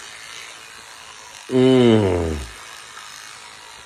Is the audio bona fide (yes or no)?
yes